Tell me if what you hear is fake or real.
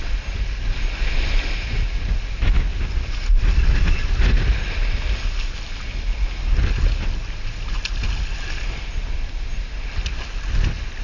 real